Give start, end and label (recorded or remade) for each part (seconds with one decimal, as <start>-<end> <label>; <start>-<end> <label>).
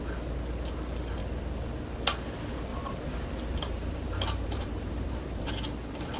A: 0.0-2.7 recorded; 2.7-5.5 remade; 5.5-6.2 recorded